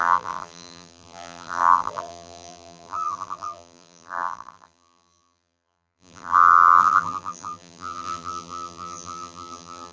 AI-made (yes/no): yes